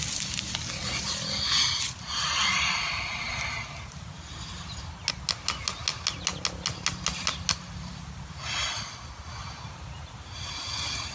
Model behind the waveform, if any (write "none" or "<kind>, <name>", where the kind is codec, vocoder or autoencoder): none